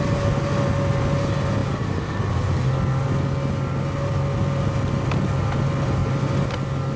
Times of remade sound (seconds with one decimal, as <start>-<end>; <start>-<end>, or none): none